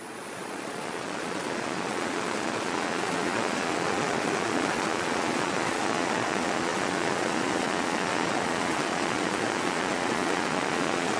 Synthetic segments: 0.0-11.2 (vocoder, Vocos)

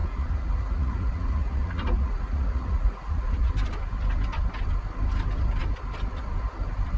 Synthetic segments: 0.0-3.5 (vocoder, Vocos)